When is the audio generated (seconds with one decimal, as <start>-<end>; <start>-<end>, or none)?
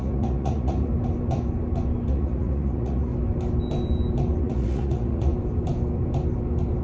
0.0-0.9; 2.1-3.1; 4.4-5.3